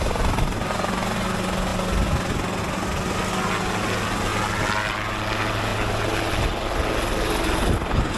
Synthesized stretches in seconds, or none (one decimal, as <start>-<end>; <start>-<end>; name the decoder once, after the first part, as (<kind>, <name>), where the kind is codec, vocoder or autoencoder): none